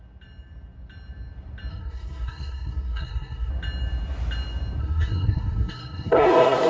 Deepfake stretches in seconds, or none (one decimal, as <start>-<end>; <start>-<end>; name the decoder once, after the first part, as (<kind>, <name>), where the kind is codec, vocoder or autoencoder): 1.7-3.5 (codec, SNAC); 4.8-6.7